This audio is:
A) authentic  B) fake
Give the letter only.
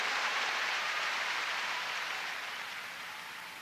B